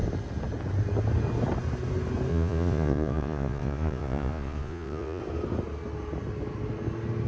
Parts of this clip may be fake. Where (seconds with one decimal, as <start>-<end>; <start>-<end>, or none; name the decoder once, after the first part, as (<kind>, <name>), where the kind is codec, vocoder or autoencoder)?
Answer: 2.3-5.2 (vocoder, Vocos)